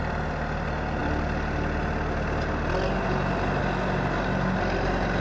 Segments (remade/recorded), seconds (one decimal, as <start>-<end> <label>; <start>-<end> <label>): 0.0-5.2 recorded